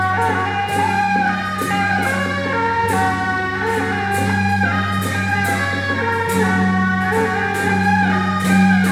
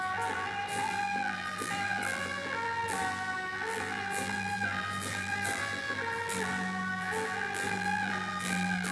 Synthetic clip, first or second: second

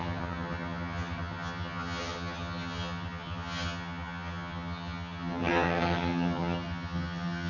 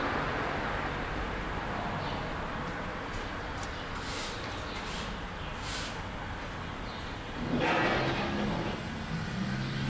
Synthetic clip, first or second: first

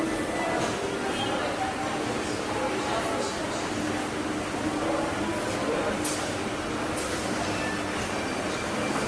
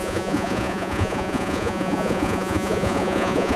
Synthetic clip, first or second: second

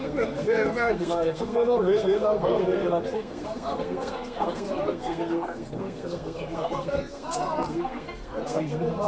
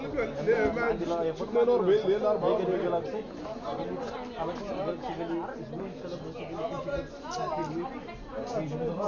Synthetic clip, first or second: first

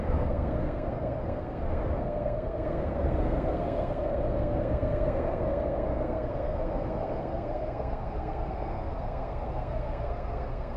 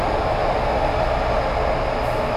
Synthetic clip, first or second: first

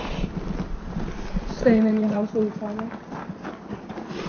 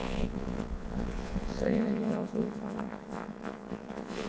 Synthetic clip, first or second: second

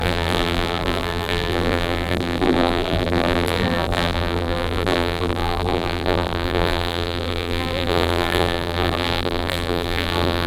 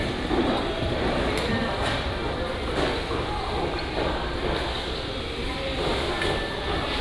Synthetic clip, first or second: first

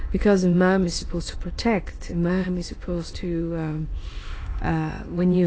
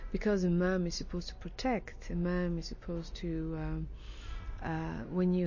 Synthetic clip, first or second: first